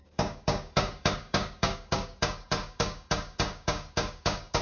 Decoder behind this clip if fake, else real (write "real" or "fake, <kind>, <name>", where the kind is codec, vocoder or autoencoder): fake, codec, DAC